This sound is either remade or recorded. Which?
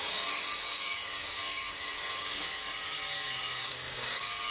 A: remade